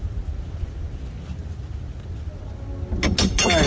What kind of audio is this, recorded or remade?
recorded